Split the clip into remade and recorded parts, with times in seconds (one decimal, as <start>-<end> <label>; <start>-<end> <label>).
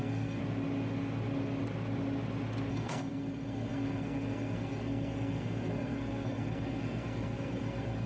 0.0-0.4 remade; 0.4-2.7 recorded; 2.7-8.1 remade